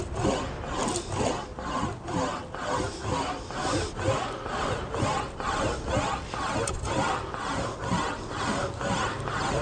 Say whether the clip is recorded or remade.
recorded